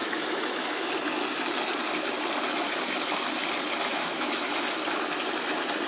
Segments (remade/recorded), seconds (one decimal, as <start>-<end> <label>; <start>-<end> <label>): 0.0-0.9 remade; 0.9-3.9 recorded; 3.9-4.6 remade; 4.6-5.9 recorded